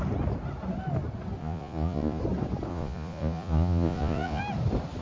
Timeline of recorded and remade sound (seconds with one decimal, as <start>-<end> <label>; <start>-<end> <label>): 0.0-1.4 recorded; 1.4-2.2 remade; 2.2-2.7 recorded; 2.7-4.4 remade; 4.4-5.0 recorded